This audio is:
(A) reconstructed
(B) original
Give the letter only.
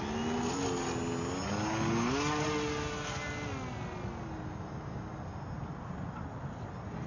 B